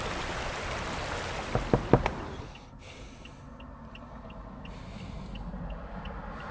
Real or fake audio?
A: real